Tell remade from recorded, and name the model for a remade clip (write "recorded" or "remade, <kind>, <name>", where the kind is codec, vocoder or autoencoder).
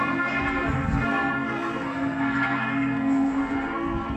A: remade, codec, SNAC